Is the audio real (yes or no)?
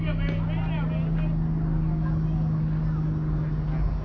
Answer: yes